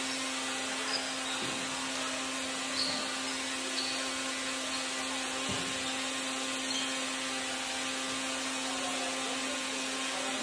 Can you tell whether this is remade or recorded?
recorded